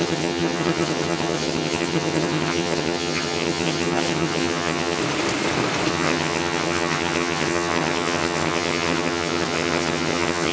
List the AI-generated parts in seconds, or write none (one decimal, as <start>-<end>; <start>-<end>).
0.0-5.0; 5.9-10.5